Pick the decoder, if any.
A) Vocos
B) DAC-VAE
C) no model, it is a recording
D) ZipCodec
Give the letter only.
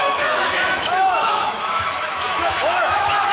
B